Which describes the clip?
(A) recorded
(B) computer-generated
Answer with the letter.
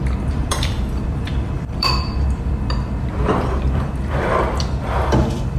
B